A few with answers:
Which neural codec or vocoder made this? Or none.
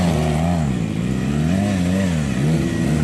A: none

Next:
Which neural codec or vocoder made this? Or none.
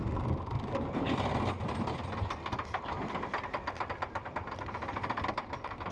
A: none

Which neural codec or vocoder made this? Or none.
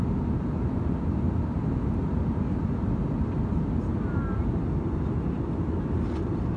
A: none